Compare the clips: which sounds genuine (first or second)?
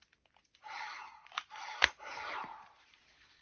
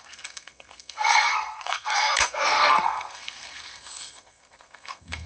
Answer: first